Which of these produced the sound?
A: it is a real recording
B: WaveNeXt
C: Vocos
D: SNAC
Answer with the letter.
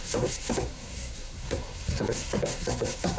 D